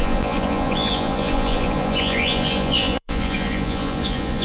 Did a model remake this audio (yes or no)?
yes